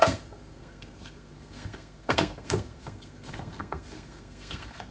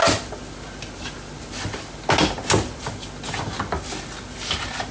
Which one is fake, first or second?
first